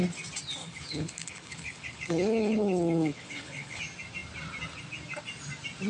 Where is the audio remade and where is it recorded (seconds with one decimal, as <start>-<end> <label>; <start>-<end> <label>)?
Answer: 0.0-0.6 recorded; 0.6-3.8 remade; 3.8-5.9 recorded